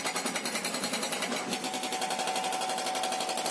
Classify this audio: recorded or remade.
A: recorded